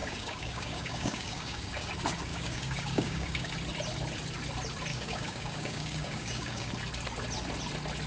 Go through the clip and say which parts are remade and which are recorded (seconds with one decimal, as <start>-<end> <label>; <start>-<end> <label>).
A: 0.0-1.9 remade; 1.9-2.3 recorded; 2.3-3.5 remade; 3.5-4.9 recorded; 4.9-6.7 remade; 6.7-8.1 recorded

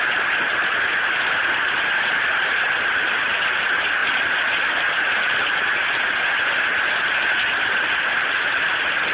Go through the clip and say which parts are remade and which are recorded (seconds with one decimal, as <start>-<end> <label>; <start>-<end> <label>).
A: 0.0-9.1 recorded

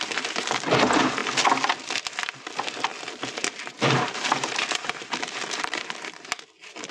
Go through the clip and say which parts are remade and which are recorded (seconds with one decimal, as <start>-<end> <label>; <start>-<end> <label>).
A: 0.0-2.9 recorded; 2.9-5.9 remade; 5.9-6.9 recorded